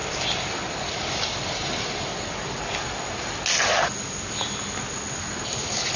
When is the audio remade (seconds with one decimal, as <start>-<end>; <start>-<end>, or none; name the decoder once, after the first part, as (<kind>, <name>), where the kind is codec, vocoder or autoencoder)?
none

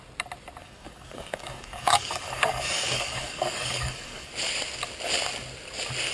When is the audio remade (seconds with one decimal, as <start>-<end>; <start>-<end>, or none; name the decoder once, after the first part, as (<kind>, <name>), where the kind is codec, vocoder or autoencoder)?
0.6-4.3 (codec, DAC)

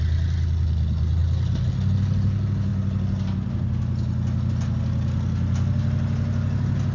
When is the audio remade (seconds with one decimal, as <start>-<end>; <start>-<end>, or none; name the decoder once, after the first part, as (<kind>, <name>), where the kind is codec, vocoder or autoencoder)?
none